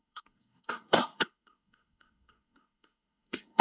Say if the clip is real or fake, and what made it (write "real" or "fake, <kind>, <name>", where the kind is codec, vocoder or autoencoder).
fake, codec, SNAC